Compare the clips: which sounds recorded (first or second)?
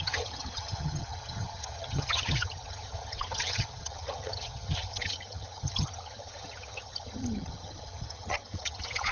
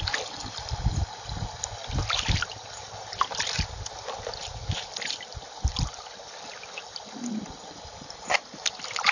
second